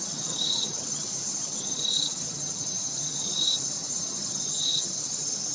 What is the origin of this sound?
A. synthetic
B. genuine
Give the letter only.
A